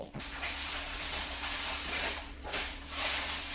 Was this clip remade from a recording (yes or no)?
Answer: yes